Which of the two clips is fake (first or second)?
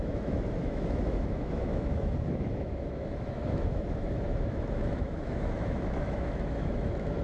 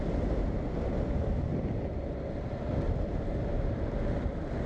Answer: first